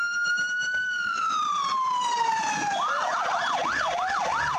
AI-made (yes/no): no